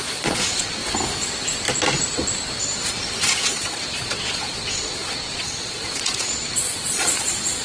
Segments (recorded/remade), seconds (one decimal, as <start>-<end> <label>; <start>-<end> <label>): 0.0-0.8 remade; 0.8-2.9 recorded; 2.9-7.6 remade